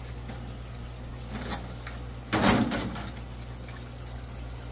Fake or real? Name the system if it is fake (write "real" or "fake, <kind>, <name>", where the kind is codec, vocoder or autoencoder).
real